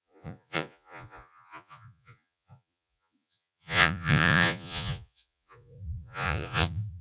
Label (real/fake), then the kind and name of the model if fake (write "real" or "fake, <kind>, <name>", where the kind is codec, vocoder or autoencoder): fake, vocoder, Vocos